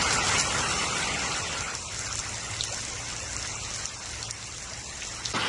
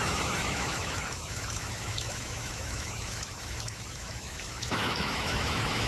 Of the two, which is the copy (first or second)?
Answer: second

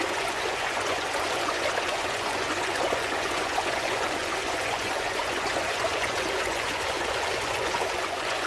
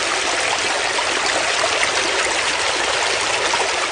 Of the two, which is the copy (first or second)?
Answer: first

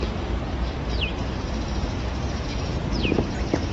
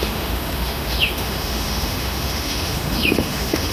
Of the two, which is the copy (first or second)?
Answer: second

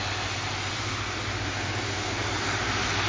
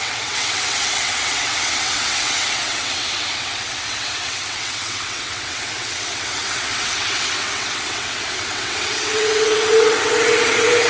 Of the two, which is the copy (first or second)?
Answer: second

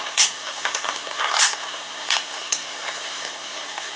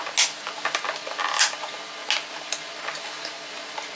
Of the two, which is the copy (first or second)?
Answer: first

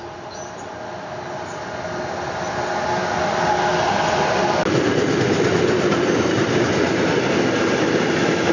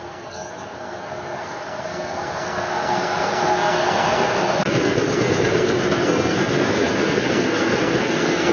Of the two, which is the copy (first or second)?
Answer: second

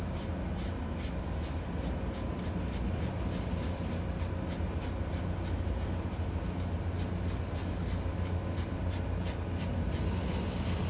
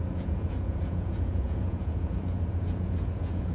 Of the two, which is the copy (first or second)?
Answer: second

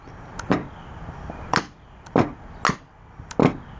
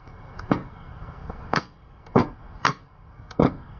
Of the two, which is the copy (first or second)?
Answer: second